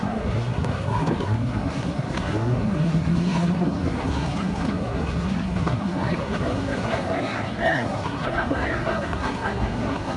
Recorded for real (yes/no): no